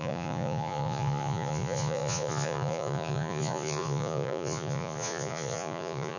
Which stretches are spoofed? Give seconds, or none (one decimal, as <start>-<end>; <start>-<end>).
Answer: 0.0-6.2